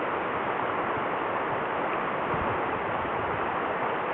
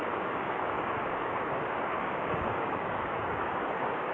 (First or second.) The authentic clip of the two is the first